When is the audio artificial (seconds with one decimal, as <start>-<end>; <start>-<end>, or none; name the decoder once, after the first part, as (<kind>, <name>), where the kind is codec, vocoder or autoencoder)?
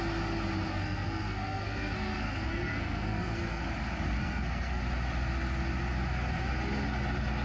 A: 0.7-3.6 (codec, SNAC); 4.2-4.8